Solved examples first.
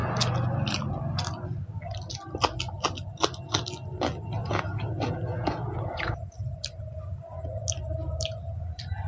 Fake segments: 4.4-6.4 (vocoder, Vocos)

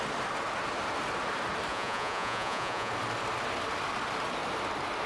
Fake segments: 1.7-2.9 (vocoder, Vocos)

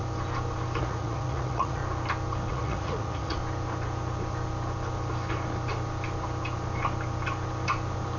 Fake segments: 0.8-1.8 (vocoder, Vocos); 2.5-3.4

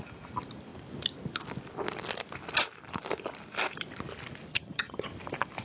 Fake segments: 4.5-5.1 (vocoder, HiFi-GAN)

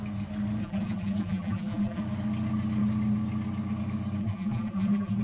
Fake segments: 0.6-2.0 (vocoder, BigVGAN v2); 4.2-5.2

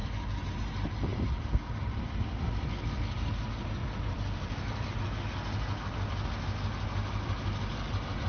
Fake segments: 3.8-5.0 (vocoder, BigVGAN v2)